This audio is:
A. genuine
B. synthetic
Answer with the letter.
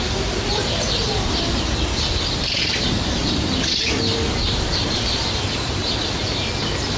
A